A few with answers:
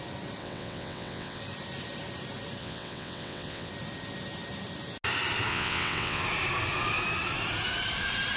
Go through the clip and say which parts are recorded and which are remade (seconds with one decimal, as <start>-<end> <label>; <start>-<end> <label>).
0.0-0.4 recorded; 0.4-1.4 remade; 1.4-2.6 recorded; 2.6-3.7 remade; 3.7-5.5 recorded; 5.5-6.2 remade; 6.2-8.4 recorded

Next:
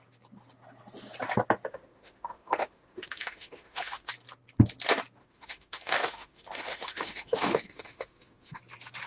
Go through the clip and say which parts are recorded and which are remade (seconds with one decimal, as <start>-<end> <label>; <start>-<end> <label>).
0.0-1.7 recorded; 1.7-4.1 remade; 4.1-5.2 recorded; 5.2-8.6 remade; 8.6-9.1 recorded

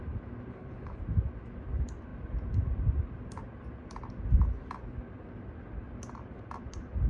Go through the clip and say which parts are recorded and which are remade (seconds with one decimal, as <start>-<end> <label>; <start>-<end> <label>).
0.0-0.5 recorded; 0.5-1.0 remade; 1.0-7.1 recorded

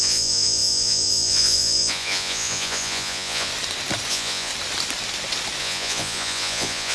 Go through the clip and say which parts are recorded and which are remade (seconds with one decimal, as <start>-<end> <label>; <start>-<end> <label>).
0.0-3.5 remade; 3.5-4.1 recorded; 4.1-4.5 remade; 4.5-5.6 recorded; 5.6-6.9 remade

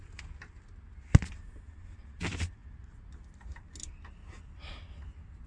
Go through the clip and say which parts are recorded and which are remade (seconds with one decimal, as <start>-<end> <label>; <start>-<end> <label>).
0.0-5.5 recorded

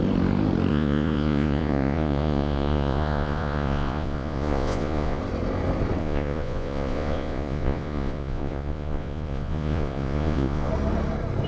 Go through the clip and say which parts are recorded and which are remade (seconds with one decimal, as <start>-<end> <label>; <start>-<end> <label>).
0.0-0.7 recorded; 0.7-5.2 remade; 5.2-6.0 recorded; 6.0-10.7 remade; 10.7-11.5 recorded

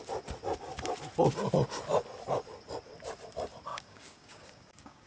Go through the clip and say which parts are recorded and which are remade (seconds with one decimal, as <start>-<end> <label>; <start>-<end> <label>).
0.0-3.7 recorded; 3.7-5.1 remade